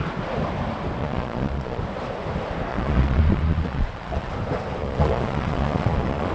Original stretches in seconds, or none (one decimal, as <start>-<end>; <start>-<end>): 0.0-1.0; 1.8-2.7; 4.3-4.8